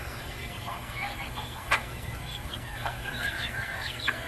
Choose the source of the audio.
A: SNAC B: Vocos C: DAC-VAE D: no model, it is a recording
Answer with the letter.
A